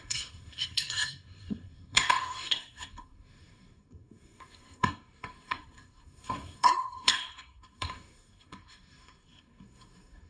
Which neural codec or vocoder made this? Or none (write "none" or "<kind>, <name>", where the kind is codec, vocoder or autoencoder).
codec, SNAC